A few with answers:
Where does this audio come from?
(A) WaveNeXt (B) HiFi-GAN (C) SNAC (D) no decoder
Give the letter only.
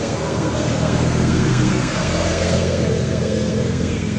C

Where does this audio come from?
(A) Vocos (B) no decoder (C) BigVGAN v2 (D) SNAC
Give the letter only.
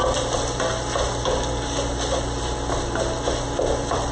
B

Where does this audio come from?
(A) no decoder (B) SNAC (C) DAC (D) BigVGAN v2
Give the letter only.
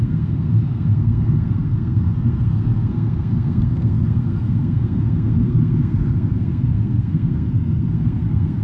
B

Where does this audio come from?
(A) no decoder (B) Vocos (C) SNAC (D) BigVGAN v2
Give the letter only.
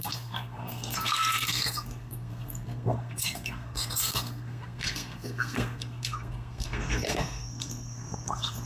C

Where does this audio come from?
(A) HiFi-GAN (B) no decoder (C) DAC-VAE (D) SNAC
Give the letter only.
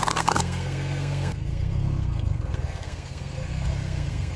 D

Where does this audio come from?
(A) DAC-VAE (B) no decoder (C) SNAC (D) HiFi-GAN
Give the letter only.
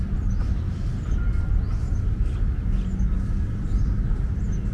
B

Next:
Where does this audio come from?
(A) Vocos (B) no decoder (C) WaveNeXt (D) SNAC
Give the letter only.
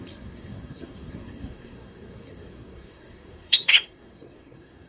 D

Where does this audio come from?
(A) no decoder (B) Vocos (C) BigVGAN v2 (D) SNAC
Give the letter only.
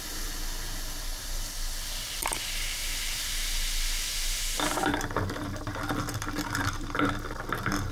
A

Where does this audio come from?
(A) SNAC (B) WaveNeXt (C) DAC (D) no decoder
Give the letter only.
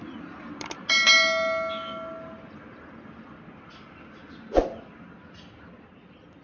D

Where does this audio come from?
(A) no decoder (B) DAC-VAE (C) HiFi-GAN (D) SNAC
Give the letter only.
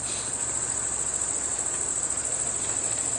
A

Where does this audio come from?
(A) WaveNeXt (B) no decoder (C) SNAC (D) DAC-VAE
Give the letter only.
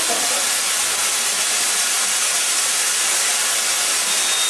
B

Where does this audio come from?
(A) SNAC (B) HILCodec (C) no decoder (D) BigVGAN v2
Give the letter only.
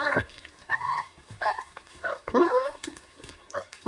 A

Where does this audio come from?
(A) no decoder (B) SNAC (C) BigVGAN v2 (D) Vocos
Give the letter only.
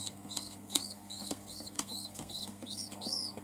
B